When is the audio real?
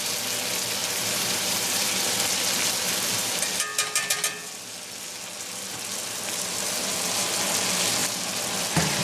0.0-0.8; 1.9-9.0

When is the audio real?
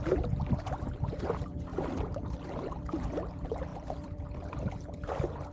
0.0-1.7; 2.8-3.7; 4.7-5.5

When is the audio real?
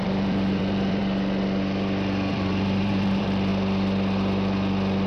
1.0-2.3; 3.5-5.1